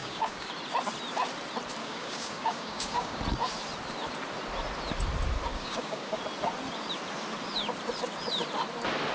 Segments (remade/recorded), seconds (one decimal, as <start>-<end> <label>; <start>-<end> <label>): 0.0-0.5 remade; 0.5-1.8 recorded; 1.8-3.2 remade; 3.2-5.5 recorded; 5.5-6.2 remade; 6.2-9.1 recorded